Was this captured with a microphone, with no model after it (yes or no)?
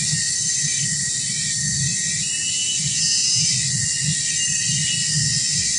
yes